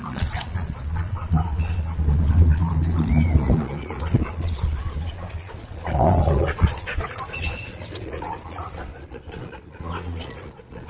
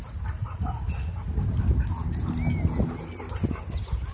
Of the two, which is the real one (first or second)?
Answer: second